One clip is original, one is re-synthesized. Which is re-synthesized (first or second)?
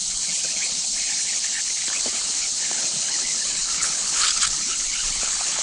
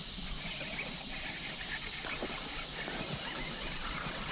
first